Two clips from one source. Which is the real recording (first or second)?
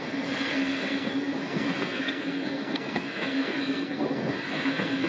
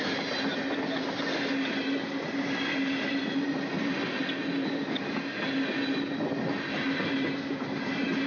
second